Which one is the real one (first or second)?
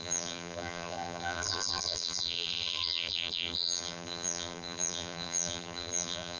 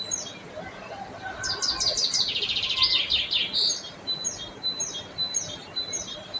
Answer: second